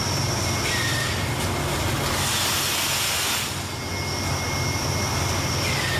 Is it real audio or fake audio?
real